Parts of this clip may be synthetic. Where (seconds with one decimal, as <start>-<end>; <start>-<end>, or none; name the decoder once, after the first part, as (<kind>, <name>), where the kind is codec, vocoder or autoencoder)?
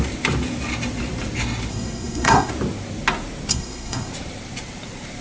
1.7-2.5 (codec, SNAC); 3.5-4.1